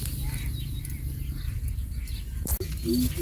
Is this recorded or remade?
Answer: recorded